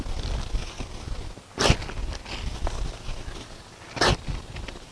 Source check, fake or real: real